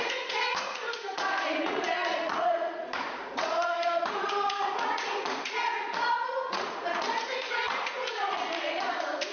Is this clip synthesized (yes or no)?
yes